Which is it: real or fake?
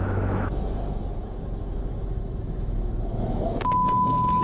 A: fake